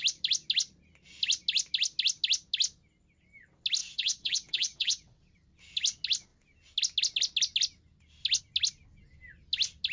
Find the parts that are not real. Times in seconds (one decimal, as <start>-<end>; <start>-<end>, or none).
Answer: 3.8-5.2